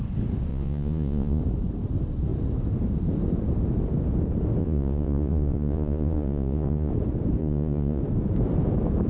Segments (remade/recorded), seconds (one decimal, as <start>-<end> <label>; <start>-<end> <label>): 0.0-0.5 recorded; 0.5-1.4 remade; 1.4-4.6 recorded; 4.6-6.9 remade; 6.9-7.4 recorded; 7.4-8.0 remade; 8.0-9.1 recorded